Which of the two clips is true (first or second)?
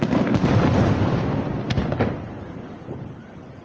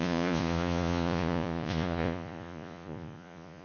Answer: first